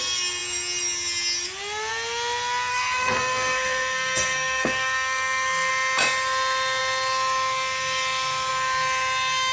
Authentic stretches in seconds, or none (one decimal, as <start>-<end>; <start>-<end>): 0.0-2.7; 5.7-9.5